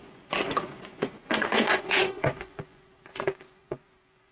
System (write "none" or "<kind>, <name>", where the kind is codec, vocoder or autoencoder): vocoder, Vocos